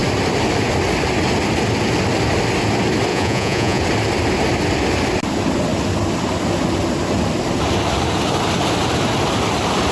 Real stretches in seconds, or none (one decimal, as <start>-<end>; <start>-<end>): 0.0-3.1; 3.8-9.9